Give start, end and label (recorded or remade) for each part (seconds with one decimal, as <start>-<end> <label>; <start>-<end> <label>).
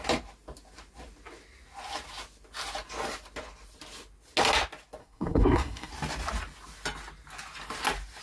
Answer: 0.0-5.0 recorded; 5.0-5.9 remade; 5.9-8.2 recorded